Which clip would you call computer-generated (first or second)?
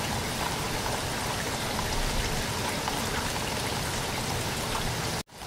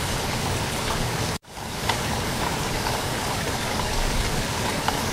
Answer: second